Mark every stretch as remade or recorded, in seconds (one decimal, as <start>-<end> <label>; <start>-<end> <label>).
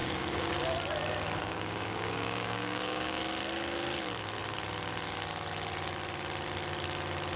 0.0-0.5 remade; 0.5-1.4 recorded; 1.4-3.2 remade; 3.2-7.4 recorded